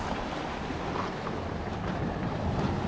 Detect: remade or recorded recorded